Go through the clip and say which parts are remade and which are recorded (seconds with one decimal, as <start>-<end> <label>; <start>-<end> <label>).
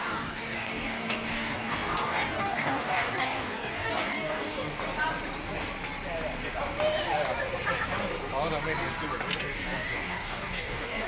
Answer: 0.0-4.7 remade; 4.7-9.4 recorded; 9.4-11.1 remade